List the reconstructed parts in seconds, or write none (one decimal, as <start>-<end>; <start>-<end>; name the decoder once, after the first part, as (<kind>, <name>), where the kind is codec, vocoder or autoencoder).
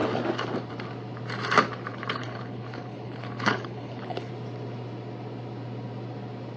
1.9-4.3 (codec, HILCodec)